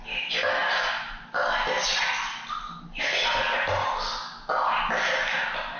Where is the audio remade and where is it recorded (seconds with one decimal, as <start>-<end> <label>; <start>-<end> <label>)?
0.0-5.8 recorded

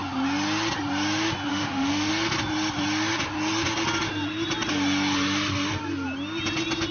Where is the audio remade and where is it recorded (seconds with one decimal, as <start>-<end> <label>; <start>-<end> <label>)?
0.0-1.5 recorded; 1.5-2.1 remade; 2.1-6.9 recorded

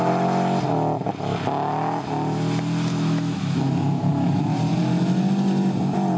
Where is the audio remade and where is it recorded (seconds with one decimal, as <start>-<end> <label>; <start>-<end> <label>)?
0.0-2.9 recorded; 2.9-4.1 remade; 4.1-6.2 recorded

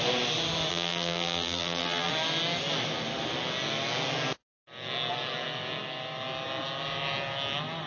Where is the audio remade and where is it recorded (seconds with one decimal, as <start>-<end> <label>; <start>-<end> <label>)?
0.0-0.7 recorded; 0.7-2.1 remade; 2.1-7.9 recorded